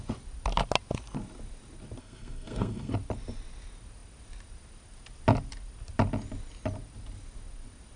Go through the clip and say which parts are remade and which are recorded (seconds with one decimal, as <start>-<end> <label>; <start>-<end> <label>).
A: 0.0-2.0 recorded; 2.0-2.9 remade; 2.9-8.0 recorded